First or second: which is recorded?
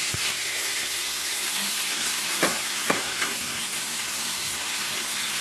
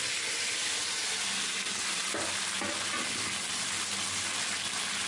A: second